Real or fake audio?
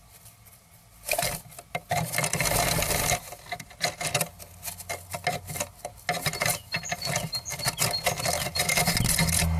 real